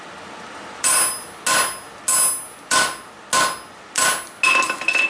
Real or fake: real